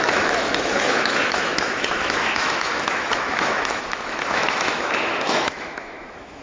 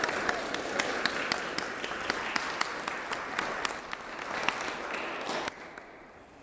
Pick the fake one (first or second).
first